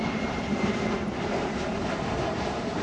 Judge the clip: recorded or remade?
remade